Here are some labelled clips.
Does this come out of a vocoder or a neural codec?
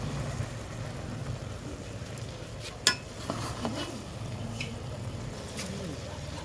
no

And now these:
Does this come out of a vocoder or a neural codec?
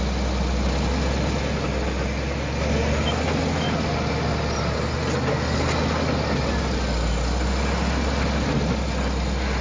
no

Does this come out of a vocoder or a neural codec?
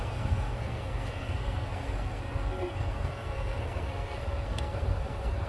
yes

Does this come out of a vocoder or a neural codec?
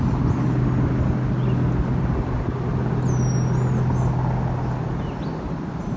no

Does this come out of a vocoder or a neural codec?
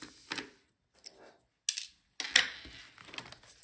no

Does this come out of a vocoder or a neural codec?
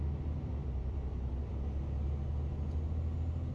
no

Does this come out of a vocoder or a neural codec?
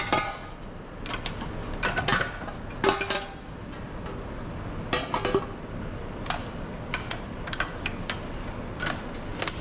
no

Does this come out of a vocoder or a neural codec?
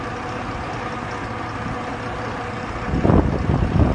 no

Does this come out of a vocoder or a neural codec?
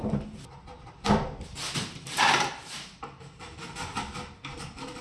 no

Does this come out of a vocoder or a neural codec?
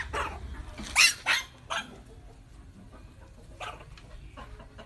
no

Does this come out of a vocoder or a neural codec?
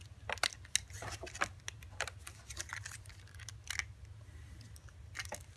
no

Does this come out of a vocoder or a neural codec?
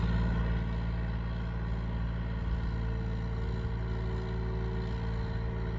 no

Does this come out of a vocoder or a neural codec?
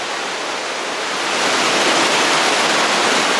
no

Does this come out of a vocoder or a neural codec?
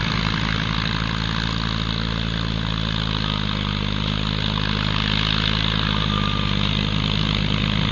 no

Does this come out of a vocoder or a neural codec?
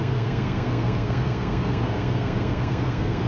yes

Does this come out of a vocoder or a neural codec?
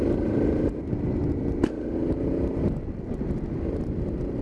no